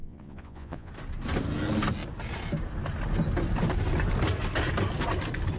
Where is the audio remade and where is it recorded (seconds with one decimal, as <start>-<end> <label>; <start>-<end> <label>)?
0.0-0.9 remade; 0.9-5.6 recorded